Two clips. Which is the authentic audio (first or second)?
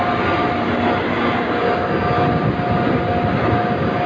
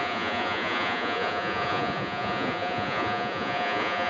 first